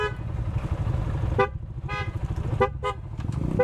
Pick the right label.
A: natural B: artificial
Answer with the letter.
A